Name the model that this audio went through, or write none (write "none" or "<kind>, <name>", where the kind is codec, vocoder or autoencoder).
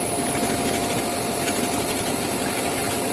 none